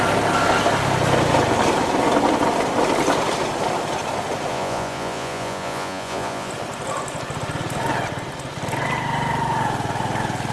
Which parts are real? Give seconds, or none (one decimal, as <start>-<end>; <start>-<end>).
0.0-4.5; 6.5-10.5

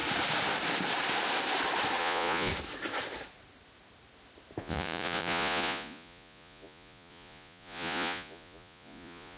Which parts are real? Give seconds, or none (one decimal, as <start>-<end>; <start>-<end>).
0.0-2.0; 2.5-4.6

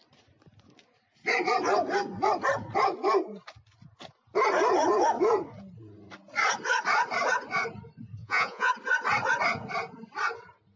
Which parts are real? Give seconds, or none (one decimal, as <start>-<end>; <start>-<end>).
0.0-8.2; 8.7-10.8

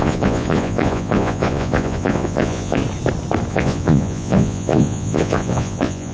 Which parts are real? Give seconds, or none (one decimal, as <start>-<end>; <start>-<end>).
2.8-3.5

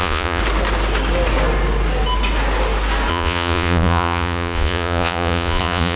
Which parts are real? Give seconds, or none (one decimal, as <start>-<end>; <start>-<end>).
0.4-3.1

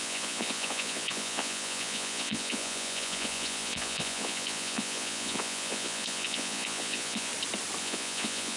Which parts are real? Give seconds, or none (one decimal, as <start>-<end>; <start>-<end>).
7.3-7.8